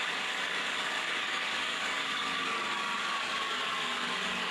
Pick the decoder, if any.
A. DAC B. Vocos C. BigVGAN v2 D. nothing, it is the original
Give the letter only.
A